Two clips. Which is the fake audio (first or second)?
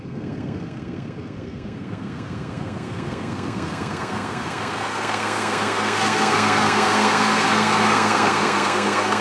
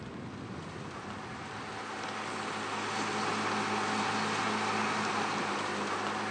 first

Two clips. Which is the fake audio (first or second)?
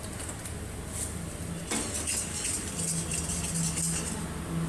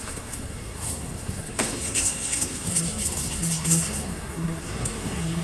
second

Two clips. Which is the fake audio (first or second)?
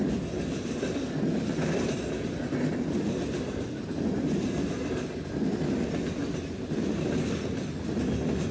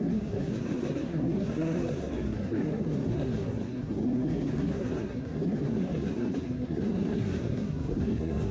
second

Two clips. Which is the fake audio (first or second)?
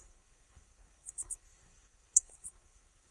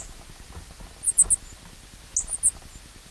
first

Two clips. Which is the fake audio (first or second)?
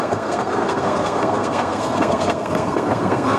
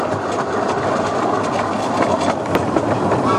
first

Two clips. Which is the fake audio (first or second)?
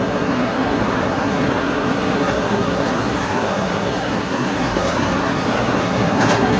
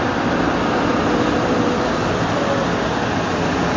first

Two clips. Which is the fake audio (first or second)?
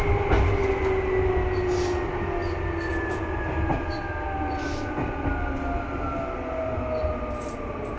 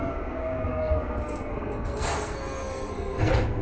second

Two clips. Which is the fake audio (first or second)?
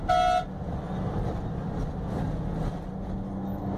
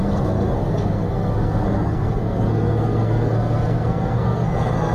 second